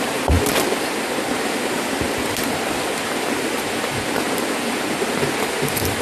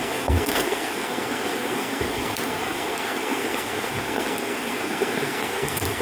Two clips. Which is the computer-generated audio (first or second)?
second